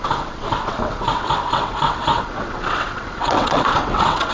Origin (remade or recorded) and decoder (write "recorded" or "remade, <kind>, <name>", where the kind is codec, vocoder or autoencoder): remade, vocoder, WaveNeXt